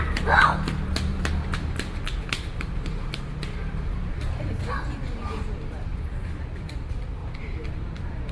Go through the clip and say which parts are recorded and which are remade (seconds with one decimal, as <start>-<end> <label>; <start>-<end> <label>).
0.0-1.1 recorded; 1.1-4.5 remade; 4.5-5.9 recorded; 5.9-6.7 remade; 6.7-8.3 recorded